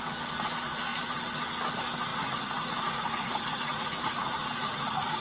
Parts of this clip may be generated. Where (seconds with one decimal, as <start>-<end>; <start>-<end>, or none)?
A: 2.1-5.2